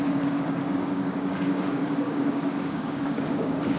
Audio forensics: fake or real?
fake